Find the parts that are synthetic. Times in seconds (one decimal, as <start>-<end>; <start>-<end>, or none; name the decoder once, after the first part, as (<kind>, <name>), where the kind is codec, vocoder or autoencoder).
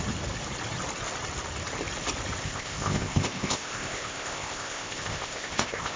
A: 2.4-6.0 (codec, ZipCodec)